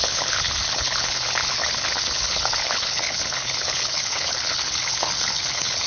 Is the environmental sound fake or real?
fake